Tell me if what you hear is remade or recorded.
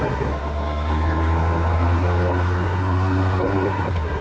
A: remade